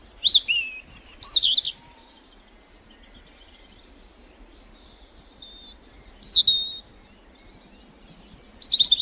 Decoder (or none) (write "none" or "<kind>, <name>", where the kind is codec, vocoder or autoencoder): none